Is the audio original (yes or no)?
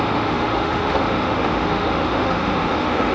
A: no